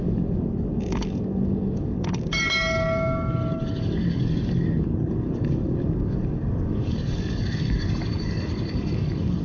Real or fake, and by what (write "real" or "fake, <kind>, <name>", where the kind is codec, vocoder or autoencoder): fake, codec, DAC